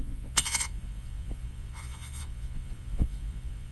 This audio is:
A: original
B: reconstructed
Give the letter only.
B